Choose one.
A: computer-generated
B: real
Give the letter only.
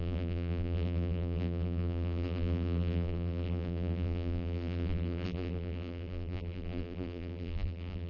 A